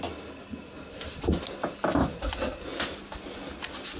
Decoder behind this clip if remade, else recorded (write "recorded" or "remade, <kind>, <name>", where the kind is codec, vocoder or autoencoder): recorded